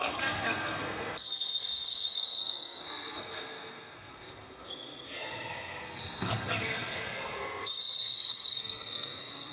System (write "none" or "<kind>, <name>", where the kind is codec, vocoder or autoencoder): codec, SNAC